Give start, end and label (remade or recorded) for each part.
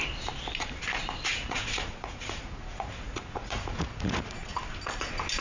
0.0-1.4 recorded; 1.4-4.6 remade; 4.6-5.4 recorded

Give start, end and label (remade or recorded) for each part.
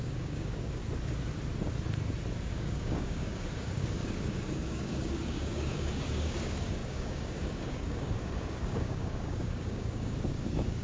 0.0-0.8 remade; 0.8-2.5 recorded; 2.5-10.8 remade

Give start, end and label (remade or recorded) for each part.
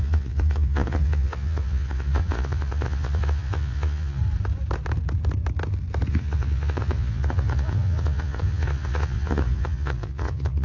0.0-4.2 remade; 4.2-6.1 recorded; 6.1-10.6 remade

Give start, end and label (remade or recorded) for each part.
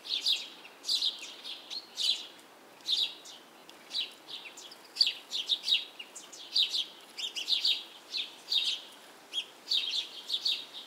0.0-10.9 recorded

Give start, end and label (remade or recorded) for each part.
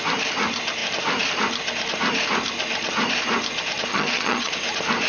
0.0-3.9 recorded; 3.9-4.5 remade; 4.5-5.1 recorded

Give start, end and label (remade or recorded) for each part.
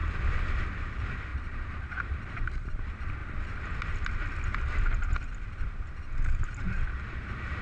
0.0-1.3 recorded; 1.3-2.7 remade; 2.7-7.6 recorded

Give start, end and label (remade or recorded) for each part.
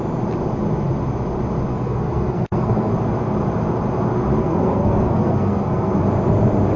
0.0-1.7 recorded; 1.7-2.9 remade; 2.9-4.4 recorded; 4.4-6.0 remade; 6.0-6.8 recorded